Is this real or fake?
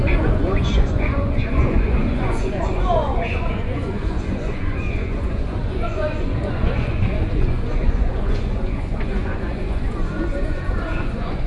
fake